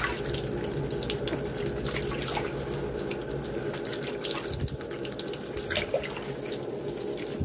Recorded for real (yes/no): yes